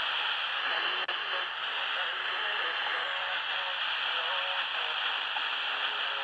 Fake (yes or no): no